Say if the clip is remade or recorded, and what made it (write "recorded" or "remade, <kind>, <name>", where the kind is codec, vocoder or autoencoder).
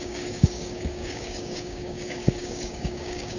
remade, codec, DAC